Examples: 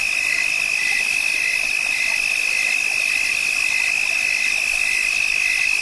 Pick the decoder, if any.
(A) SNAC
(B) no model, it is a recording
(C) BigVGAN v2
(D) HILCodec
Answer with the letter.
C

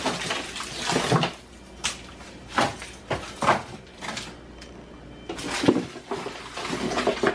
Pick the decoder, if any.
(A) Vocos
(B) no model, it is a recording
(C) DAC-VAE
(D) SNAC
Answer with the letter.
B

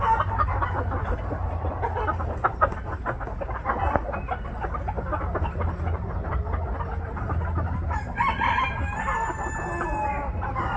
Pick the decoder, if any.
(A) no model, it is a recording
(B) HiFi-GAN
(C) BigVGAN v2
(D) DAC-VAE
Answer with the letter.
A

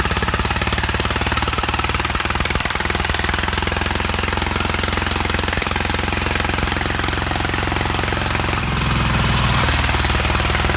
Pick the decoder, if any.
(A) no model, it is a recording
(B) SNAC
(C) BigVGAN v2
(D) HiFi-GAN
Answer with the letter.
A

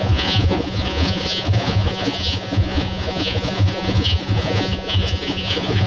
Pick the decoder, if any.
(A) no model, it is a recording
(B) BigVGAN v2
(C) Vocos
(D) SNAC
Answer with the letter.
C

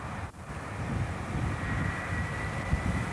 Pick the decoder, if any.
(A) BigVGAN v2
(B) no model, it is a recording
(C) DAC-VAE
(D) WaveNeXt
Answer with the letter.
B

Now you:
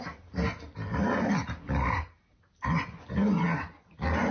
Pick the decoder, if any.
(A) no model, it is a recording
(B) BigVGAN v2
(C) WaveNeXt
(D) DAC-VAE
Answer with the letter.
A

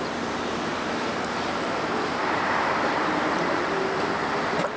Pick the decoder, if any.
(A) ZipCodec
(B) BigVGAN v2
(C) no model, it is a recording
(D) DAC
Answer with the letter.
B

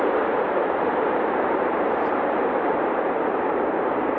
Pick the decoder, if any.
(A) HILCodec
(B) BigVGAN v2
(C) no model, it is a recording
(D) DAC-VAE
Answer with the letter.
B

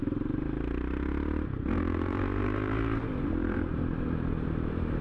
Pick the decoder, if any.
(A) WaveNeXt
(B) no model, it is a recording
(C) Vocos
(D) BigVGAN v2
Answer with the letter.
D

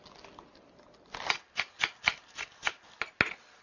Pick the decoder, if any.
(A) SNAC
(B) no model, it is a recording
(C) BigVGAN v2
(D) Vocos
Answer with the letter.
B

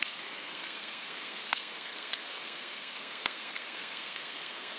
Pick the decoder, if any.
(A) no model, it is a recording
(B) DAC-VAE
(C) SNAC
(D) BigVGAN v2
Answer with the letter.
C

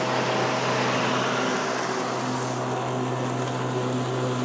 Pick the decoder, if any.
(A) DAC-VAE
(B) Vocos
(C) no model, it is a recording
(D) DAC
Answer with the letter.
C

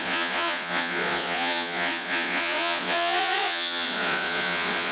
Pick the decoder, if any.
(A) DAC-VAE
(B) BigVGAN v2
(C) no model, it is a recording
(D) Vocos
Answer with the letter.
D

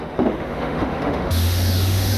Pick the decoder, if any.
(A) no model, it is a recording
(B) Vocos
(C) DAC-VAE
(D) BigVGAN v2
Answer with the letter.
C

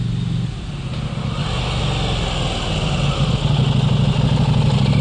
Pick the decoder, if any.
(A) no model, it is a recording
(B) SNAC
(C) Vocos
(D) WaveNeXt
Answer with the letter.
A